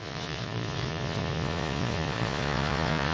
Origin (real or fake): fake